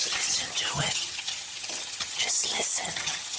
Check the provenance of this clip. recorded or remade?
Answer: remade